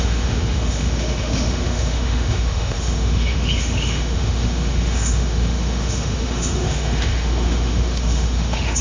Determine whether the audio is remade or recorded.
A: remade